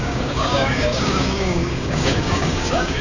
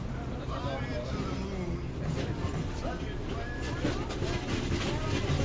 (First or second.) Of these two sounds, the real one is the second